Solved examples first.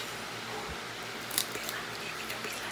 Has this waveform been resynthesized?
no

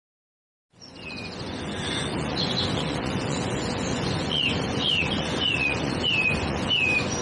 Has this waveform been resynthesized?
yes